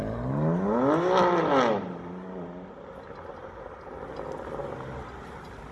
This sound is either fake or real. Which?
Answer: real